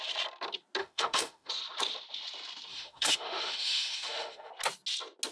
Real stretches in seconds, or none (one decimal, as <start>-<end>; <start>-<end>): 0.0-0.8; 1.5-2.7; 4.5-5.3